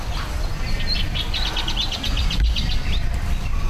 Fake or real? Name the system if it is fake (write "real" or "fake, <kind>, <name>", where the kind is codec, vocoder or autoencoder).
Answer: real